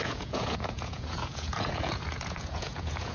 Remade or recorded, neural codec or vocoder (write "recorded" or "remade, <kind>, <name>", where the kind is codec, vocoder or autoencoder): remade, vocoder, Vocos